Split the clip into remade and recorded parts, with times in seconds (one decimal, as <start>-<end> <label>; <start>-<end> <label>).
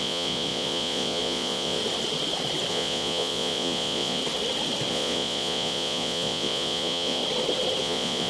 0.0-1.8 remade; 1.8-2.7 recorded; 2.7-4.2 remade; 4.2-4.9 recorded; 4.9-7.2 remade; 7.2-7.8 recorded; 7.8-8.3 remade